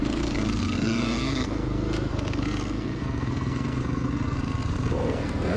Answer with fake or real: fake